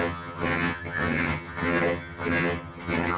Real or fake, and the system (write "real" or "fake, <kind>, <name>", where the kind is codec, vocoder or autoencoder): fake, vocoder, HiFi-GAN